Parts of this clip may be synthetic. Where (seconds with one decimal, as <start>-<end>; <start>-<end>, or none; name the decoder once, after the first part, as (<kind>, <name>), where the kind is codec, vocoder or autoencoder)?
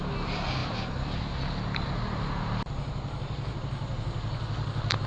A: none